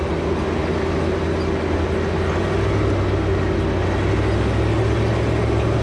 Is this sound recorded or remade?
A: recorded